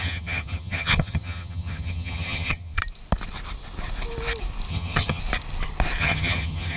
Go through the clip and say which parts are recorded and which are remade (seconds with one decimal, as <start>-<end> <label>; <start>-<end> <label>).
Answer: 0.0-2.8 remade; 2.8-4.7 recorded; 4.7-5.2 remade; 5.2-6.0 recorded; 6.0-6.8 remade